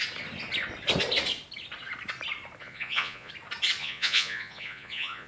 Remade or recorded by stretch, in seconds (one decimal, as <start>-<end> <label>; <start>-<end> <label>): 0.0-2.6 recorded; 2.6-3.3 remade; 3.3-3.8 recorded; 3.8-5.3 remade